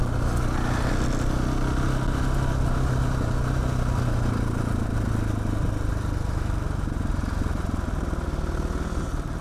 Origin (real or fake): real